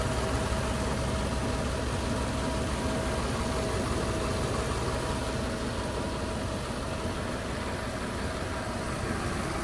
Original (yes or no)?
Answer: yes